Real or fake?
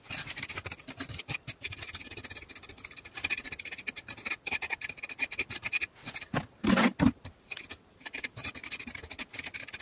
real